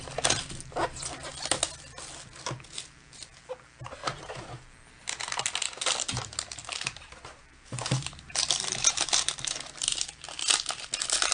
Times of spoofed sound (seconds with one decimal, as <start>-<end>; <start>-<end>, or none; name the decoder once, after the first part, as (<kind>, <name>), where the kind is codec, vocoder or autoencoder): 4.0-4.6 (vocoder, BigVGAN v2); 6.6-9.7